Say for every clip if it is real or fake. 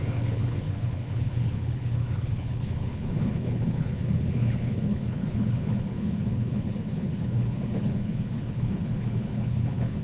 fake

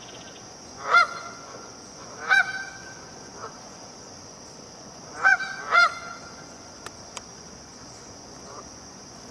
fake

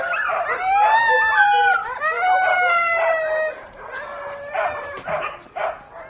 real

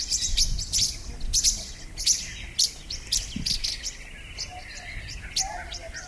real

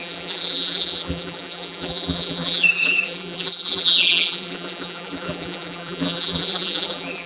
fake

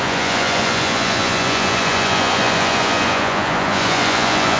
fake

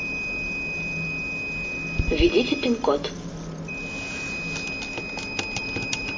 real